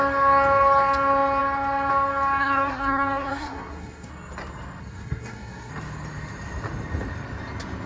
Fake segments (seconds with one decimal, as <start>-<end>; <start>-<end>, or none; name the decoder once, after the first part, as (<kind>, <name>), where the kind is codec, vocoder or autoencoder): 2.4-4.1 (codec, SNAC); 4.8-5.7